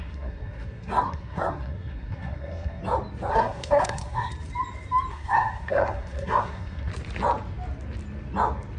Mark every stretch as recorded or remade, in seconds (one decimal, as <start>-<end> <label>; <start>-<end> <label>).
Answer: 0.0-2.8 remade; 2.8-3.3 recorded; 3.3-4.3 remade; 4.3-5.1 recorded; 5.1-6.9 remade; 6.9-8.8 recorded